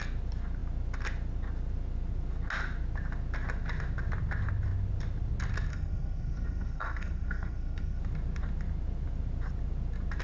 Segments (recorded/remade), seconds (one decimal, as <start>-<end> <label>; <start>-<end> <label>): 0.0-5.7 recorded; 5.7-8.0 remade; 8.0-10.2 recorded